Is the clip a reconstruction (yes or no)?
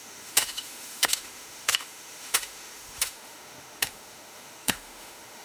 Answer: yes